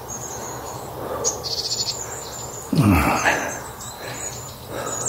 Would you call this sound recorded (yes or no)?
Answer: yes